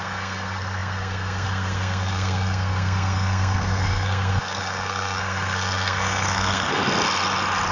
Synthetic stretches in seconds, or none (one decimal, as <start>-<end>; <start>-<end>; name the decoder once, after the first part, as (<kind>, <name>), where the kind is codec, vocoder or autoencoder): 0.0-6.8 (codec, SNAC)